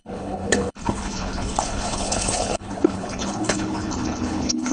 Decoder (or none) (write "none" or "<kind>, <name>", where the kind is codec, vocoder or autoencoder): codec, HILCodec